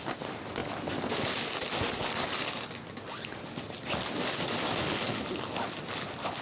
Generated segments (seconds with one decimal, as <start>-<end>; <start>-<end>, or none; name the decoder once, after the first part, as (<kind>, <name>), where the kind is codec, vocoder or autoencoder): none